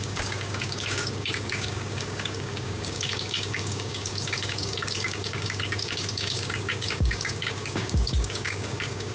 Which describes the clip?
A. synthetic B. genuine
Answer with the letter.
A